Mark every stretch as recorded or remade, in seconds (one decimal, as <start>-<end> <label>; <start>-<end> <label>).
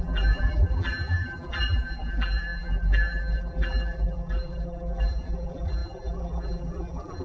0.0-7.2 remade